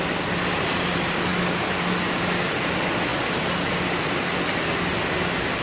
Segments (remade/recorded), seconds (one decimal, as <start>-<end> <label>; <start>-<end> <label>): 0.0-5.6 recorded